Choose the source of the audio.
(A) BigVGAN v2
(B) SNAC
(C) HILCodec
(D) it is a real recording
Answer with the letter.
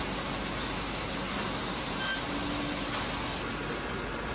D